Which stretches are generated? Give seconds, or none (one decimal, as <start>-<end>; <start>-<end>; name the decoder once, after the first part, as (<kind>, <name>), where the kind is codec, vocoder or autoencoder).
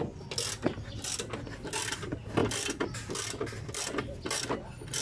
none